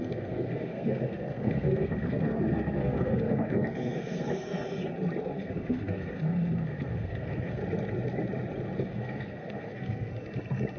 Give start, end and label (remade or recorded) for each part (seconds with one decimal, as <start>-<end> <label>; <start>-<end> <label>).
0.0-4.6 remade; 4.6-5.2 recorded; 5.2-7.6 remade; 7.6-8.8 recorded; 8.8-10.1 remade; 10.1-10.8 recorded